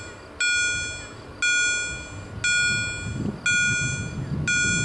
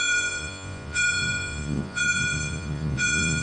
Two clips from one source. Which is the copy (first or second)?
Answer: second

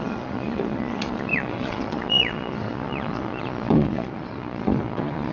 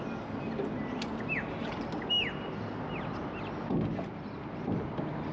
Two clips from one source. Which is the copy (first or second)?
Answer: first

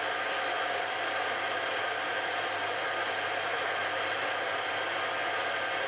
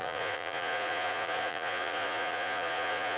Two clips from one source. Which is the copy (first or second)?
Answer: second